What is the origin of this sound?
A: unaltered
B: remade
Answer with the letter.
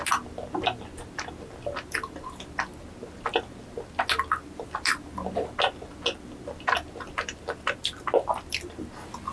A